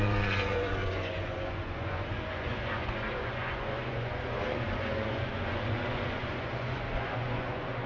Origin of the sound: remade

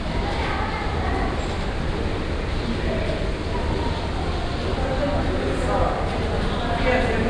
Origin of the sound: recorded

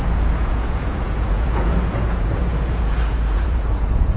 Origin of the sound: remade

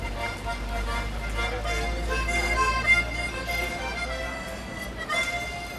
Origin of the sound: recorded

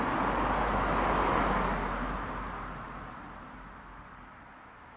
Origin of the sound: recorded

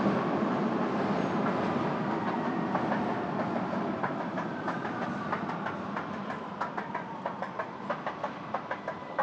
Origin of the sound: recorded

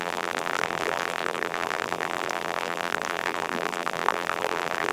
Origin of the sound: remade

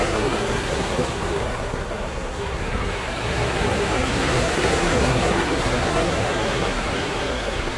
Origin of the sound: remade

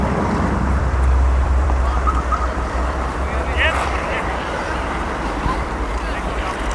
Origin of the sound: remade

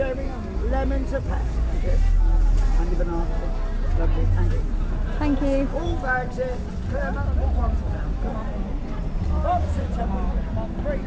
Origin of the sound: recorded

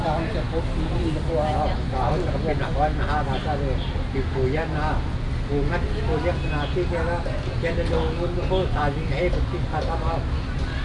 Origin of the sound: recorded